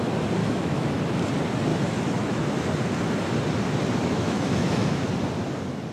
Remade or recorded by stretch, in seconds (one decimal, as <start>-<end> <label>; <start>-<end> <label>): 0.0-0.4 recorded; 0.4-1.0 remade; 1.0-1.7 recorded; 1.7-2.4 remade; 2.4-4.0 recorded; 4.0-5.1 remade; 5.1-5.9 recorded